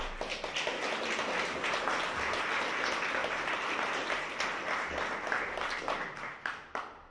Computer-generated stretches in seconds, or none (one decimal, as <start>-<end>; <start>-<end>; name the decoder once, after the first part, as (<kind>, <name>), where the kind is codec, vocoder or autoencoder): none